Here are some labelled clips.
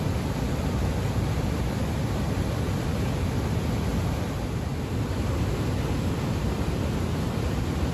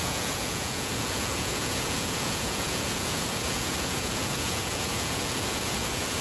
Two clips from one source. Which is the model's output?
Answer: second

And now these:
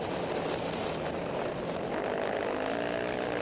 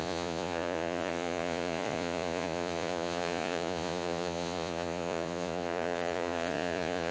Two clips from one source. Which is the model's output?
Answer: second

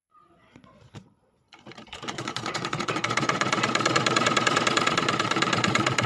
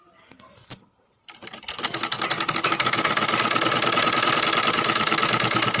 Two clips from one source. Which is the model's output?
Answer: first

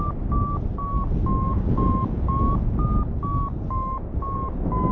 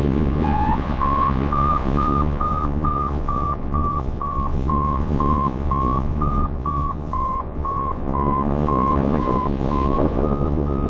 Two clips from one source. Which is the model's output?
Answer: second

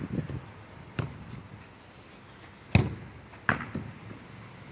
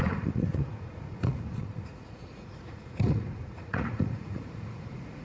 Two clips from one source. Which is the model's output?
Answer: second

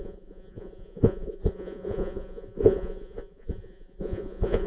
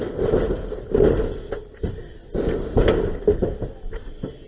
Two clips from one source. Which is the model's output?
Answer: first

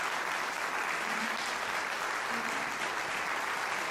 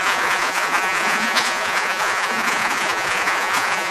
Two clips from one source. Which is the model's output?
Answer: second